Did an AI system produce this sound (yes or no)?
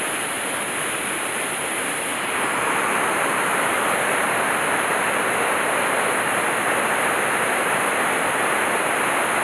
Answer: no